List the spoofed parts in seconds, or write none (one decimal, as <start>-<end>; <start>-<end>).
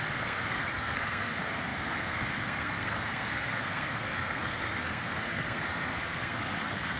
0.0-7.0